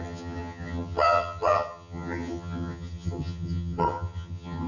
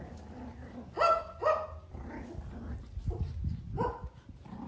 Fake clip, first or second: first